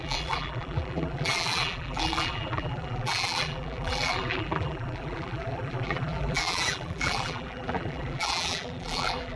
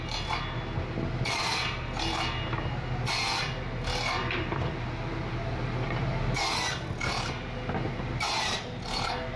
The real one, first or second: second